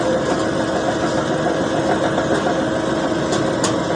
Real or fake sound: real